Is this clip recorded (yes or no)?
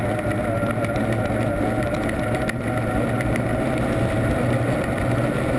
yes